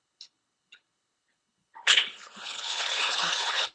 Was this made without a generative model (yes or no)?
no